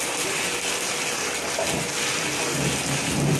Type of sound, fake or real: real